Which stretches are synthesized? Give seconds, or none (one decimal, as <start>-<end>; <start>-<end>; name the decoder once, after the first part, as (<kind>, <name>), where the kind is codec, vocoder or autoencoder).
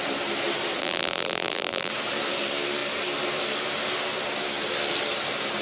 0.8-1.9 (vocoder, BigVGAN v2)